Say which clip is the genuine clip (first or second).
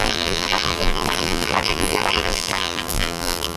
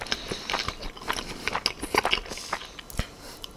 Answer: second